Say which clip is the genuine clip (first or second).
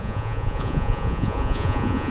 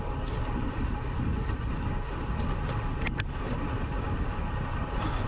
second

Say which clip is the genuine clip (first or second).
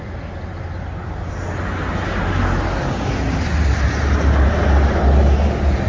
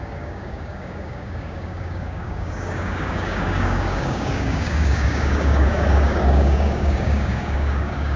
first